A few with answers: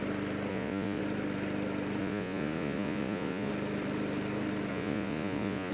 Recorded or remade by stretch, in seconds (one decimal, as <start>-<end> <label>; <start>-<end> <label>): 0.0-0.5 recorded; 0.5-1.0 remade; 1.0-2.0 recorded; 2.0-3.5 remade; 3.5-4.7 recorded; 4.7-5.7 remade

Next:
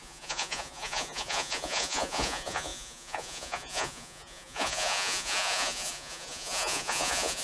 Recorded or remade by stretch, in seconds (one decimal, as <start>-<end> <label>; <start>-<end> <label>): 0.0-7.4 remade

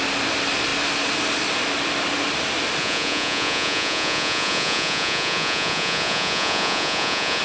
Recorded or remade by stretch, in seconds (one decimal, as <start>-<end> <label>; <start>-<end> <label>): 0.0-2.8 recorded; 2.8-7.4 remade

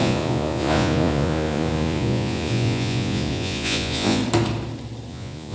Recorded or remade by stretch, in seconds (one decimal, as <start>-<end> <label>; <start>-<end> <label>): 0.0-4.2 remade; 4.2-5.1 recorded; 5.1-5.5 remade

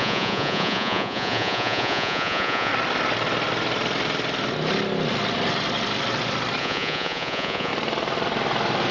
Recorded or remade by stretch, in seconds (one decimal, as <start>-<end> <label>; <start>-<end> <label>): 0.0-2.7 remade; 2.7-6.6 recorded; 6.6-7.7 remade; 7.7-8.9 recorded